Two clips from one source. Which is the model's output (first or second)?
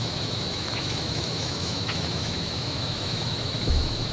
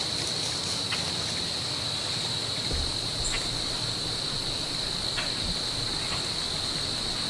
first